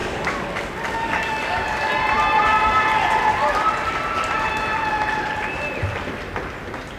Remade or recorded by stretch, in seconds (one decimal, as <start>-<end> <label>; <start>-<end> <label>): 0.0-1.9 remade; 1.9-7.0 recorded